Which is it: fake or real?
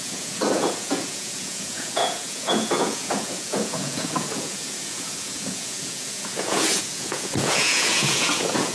fake